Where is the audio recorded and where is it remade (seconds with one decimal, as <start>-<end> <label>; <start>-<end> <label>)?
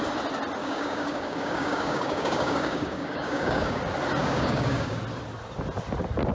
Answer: 0.0-0.6 recorded; 0.6-3.8 remade; 3.8-4.2 recorded; 4.2-5.0 remade; 5.0-6.3 recorded